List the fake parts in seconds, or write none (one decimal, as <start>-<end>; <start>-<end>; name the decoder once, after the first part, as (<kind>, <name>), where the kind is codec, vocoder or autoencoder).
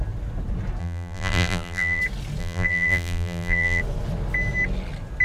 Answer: 0.8-2.0 (vocoder, BigVGAN v2); 2.4-3.8